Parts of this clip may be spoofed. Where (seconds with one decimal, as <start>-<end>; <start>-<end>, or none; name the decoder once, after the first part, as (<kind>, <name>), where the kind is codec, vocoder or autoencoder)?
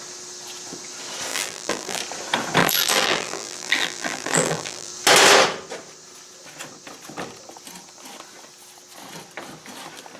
1.3-2.0 (vocoder, BigVGAN v2); 2.6-4.9